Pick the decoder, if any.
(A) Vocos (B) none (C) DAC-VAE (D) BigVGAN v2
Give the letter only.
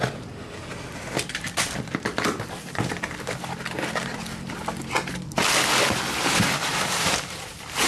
D